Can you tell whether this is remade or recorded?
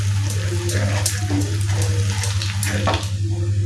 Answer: recorded